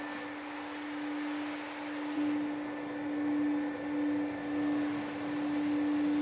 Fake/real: real